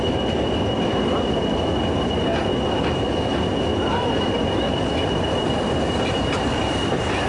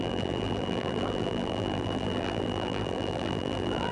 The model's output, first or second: second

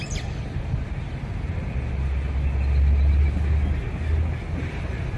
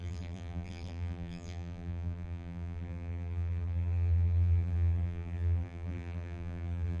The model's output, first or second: second